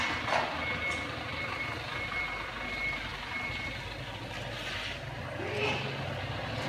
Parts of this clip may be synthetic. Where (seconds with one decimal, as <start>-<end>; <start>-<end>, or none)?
none